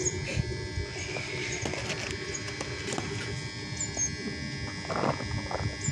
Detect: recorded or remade recorded